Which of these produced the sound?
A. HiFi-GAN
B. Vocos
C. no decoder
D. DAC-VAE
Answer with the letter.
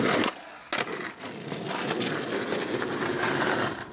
C